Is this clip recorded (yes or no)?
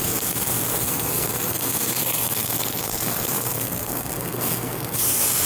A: no